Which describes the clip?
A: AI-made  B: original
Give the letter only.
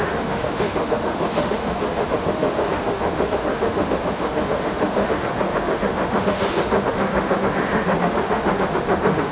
A